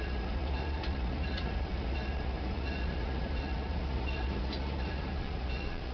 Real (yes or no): no